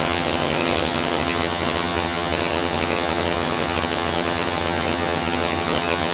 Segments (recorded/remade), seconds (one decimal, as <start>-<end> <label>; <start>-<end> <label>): 0.0-6.1 remade